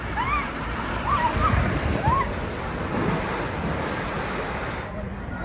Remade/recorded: recorded